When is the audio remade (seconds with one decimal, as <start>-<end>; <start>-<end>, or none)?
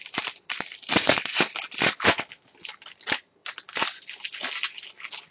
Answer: none